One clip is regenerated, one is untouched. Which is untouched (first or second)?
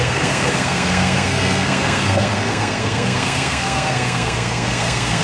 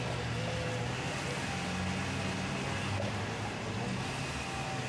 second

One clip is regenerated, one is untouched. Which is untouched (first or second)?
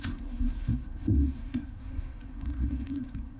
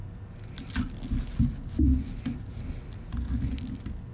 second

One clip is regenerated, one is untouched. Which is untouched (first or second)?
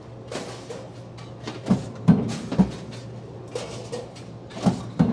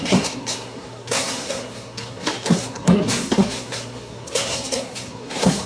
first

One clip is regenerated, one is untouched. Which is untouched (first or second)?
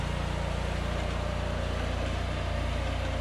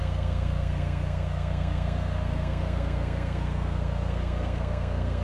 first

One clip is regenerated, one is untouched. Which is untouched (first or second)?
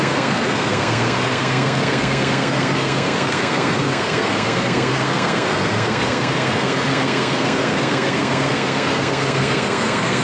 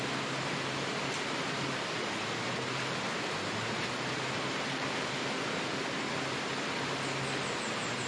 second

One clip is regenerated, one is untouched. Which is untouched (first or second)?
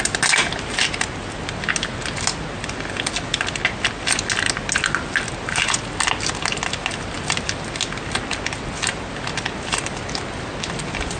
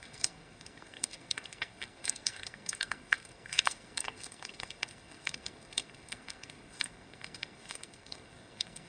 first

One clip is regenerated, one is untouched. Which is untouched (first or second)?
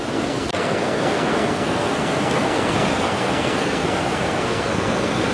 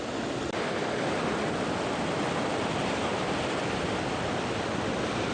second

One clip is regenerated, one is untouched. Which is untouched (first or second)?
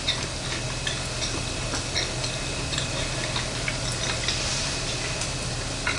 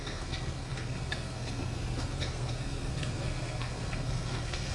first